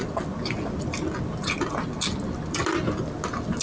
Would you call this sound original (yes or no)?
yes